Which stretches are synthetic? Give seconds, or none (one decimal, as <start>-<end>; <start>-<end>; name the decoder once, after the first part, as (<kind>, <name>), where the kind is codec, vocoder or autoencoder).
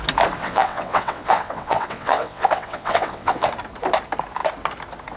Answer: 0.4-3.5 (vocoder, WaveNeXt)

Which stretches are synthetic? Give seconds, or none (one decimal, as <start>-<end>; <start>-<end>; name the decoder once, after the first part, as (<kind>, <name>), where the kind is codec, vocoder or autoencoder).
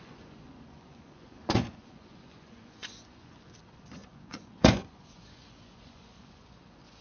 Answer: 0.0-7.0 (vocoder, Vocos)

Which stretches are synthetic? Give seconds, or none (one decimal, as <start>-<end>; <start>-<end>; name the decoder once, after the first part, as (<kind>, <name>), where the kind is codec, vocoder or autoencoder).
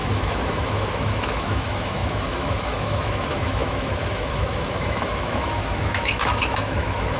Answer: 0.0-7.2 (autoencoder, DAC-VAE)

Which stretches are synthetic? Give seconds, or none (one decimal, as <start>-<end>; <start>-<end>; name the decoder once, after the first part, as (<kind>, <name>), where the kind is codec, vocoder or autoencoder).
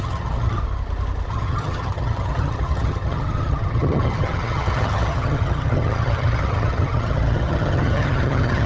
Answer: 0.0-0.6 (vocoder, HiFi-GAN); 1.3-8.7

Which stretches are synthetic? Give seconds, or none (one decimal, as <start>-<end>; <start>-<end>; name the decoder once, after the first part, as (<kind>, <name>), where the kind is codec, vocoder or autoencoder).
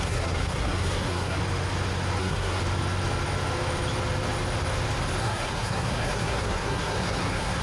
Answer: 0.0-1.4 (codec, SNAC); 2.2-2.6; 5.2-7.6